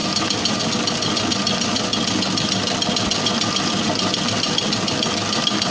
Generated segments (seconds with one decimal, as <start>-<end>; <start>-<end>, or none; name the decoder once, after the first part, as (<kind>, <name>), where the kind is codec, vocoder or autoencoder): none